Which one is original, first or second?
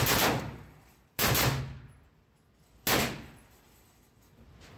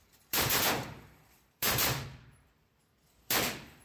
first